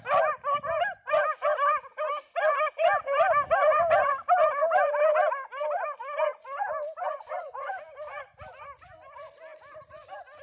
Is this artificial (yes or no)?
no